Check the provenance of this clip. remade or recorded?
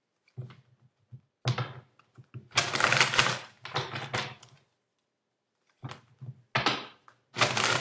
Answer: recorded